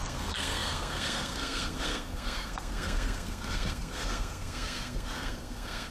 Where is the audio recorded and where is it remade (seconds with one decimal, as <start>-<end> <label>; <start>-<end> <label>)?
0.0-5.9 remade